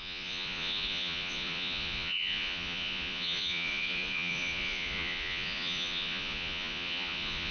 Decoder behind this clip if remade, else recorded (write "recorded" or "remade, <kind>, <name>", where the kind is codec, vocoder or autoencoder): remade, vocoder, Vocos